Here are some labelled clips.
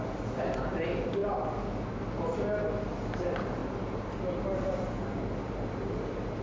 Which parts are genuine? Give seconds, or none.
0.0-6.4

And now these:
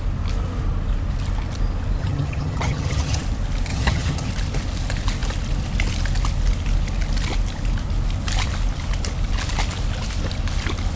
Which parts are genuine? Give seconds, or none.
0.0-2.0; 3.2-3.7; 4.3-11.0

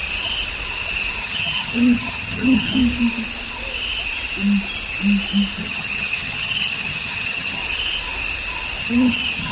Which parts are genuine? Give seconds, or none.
0.0-1.2; 2.8-5.6; 7.6-8.8

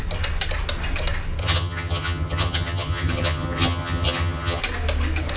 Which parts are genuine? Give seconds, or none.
0.0-1.4; 4.6-5.4

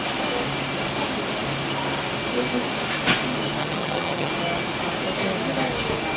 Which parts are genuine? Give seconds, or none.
0.0-3.6; 4.3-6.2

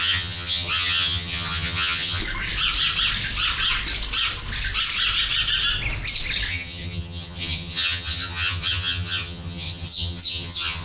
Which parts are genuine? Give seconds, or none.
2.2-6.5